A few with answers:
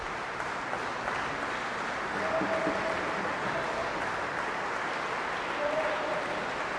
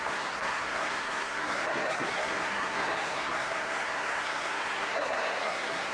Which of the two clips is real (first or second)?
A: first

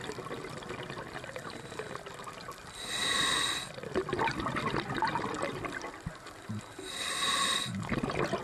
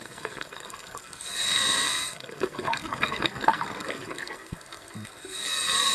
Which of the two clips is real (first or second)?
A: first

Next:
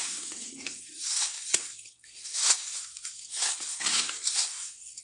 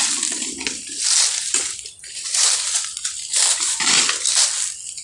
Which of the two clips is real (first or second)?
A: second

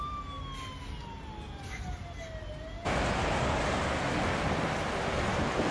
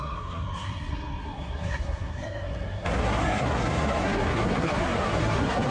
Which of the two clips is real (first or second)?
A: first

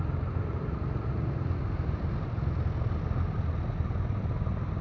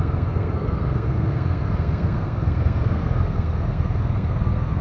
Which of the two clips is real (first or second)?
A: first